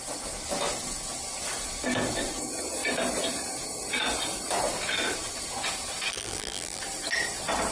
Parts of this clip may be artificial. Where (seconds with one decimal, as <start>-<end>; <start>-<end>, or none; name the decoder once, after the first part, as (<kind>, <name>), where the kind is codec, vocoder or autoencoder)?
6.1-6.8 (vocoder, BigVGAN v2)